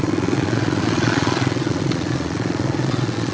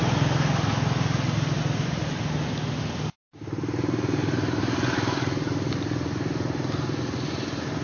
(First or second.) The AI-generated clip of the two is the first